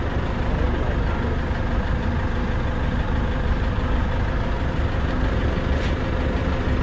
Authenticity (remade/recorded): recorded